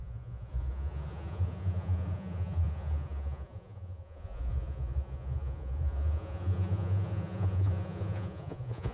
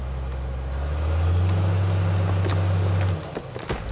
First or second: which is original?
second